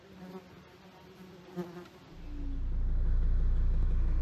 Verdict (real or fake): real